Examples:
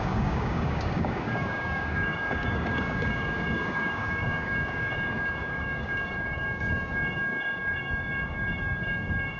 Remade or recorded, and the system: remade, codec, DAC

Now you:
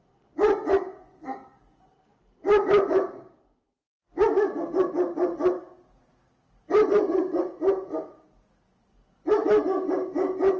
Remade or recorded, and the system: recorded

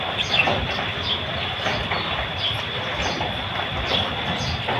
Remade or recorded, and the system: recorded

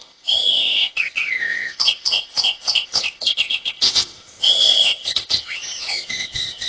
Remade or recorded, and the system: remade, codec, ZipCodec